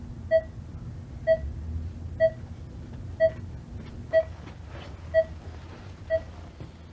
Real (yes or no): yes